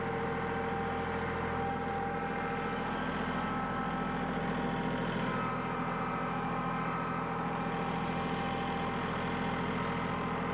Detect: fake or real real